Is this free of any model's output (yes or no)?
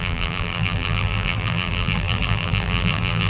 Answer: no